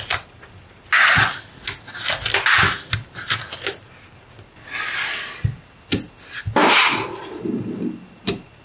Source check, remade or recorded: recorded